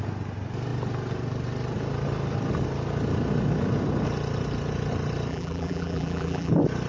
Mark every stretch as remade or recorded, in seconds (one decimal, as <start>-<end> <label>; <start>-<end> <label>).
0.0-5.3 recorded; 5.3-6.5 remade; 6.5-6.9 recorded